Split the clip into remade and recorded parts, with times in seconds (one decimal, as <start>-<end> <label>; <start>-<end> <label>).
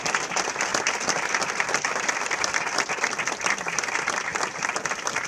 0.0-5.3 recorded